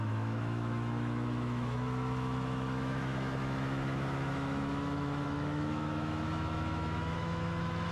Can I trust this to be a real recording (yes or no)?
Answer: no